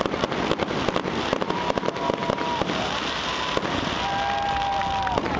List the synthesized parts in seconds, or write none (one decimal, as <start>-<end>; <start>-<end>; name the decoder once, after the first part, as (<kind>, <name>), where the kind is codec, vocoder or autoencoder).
none